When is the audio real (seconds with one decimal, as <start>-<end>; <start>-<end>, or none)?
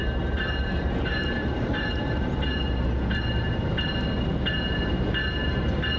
3.6-6.0